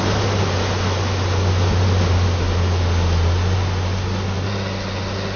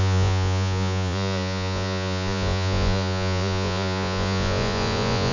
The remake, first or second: second